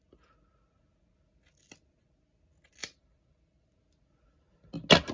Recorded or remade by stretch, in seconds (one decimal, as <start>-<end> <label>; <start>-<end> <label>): 0.0-2.8 recorded; 2.8-3.7 remade; 3.7-5.1 recorded